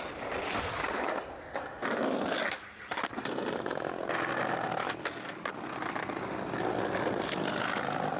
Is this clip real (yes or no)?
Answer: yes